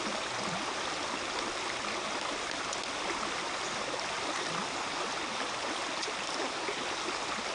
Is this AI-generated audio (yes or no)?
no